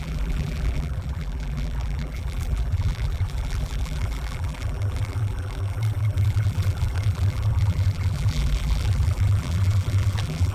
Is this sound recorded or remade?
remade